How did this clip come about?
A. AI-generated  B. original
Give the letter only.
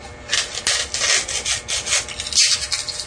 B